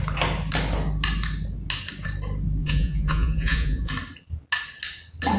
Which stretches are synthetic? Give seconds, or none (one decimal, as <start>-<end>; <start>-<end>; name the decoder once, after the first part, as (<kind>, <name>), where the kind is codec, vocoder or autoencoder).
2.6-3.9 (vocoder, Vocos)